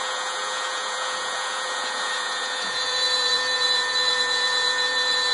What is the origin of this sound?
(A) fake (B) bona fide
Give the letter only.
A